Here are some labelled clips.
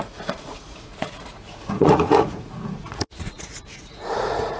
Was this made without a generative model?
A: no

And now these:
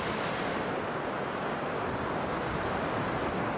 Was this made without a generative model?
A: yes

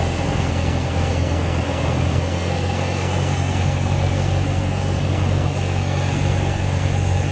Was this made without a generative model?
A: no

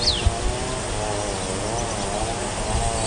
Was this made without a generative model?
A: yes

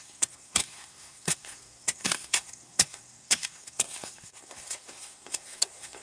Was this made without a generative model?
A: no